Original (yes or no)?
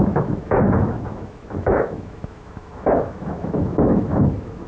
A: no